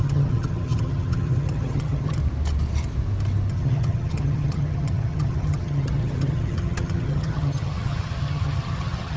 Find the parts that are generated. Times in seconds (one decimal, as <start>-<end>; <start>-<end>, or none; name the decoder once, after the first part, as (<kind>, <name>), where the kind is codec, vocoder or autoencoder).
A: 0.0-2.2 (vocoder, HiFi-GAN); 3.5-9.2